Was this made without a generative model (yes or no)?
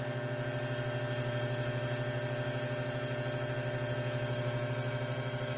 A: yes